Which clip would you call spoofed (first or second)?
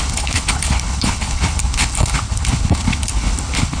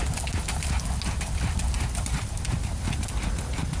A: first